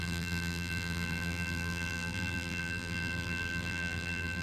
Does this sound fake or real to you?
fake